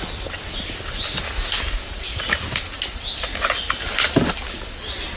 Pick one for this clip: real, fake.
real